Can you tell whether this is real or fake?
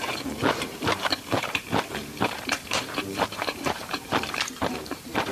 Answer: fake